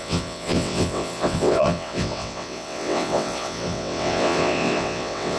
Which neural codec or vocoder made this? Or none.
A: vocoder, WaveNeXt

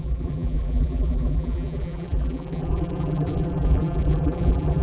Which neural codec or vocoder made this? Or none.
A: vocoder, BigVGAN v2